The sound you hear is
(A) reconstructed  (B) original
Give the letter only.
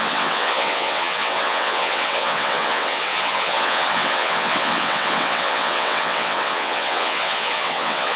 A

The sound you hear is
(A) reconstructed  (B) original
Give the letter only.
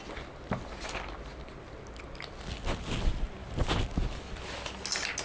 B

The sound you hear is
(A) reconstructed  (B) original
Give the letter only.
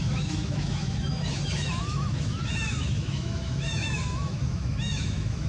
A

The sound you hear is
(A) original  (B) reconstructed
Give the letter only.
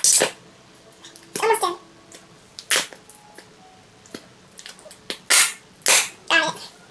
A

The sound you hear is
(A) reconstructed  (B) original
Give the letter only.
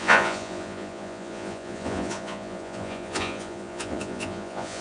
A